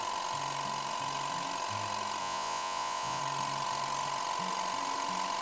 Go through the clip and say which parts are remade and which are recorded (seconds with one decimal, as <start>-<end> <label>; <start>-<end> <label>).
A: 0.0-2.2 recorded; 2.2-3.2 remade; 3.2-5.4 recorded